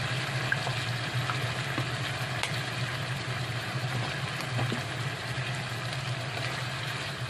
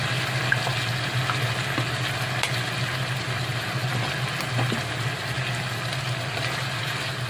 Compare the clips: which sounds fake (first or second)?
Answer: first